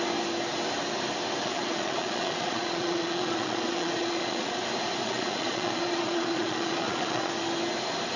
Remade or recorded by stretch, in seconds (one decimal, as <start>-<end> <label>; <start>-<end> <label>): 0.0-1.4 recorded; 1.4-4.6 remade; 4.6-5.0 recorded; 5.0-7.3 remade; 7.3-8.2 recorded